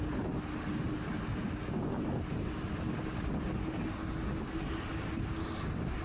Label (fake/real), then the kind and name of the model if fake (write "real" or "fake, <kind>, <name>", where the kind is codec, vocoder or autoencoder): real